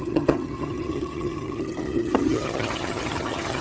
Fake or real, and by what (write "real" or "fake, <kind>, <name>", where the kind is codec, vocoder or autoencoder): fake, vocoder, HiFi-GAN